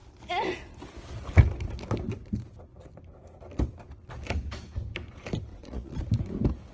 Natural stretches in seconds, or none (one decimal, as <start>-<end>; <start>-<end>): 0.0-5.5; 6.0-6.7